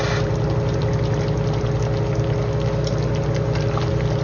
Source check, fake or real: real